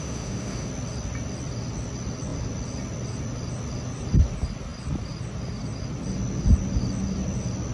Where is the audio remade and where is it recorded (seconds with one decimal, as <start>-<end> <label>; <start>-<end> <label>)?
0.0-0.7 remade; 0.7-7.7 recorded